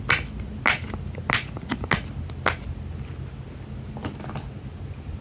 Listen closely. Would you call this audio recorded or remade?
recorded